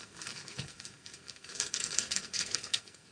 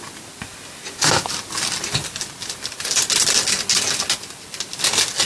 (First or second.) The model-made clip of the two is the first